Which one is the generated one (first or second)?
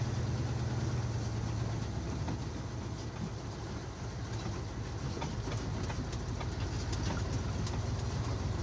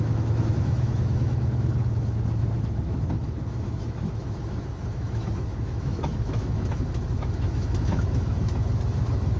second